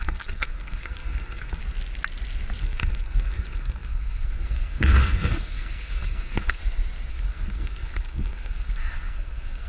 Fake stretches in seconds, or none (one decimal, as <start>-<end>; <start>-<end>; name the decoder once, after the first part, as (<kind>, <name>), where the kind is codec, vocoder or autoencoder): 0.0-1.6 (codec, SNAC); 2.6-6.6; 7.1-9.7